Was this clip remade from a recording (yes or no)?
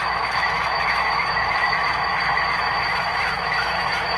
yes